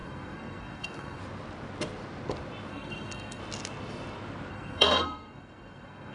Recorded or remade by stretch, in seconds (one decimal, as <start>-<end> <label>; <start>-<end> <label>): 0.0-1.2 remade; 1.2-2.7 recorded; 2.7-3.4 remade; 3.4-4.5 recorded; 4.5-6.1 remade